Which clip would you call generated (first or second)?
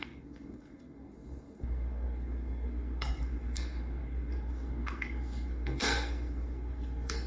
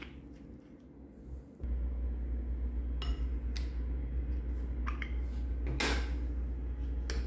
first